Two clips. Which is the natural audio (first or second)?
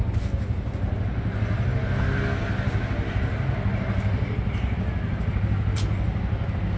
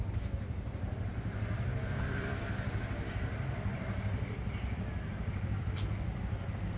first